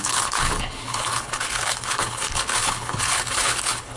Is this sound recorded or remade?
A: remade